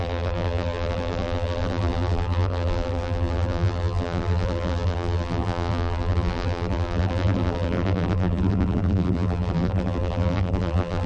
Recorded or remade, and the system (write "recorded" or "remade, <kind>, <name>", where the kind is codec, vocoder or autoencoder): remade, vocoder, BigVGAN v2